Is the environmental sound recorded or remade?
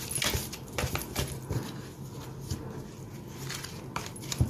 recorded